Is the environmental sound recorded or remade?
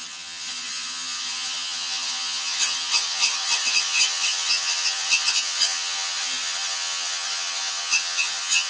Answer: remade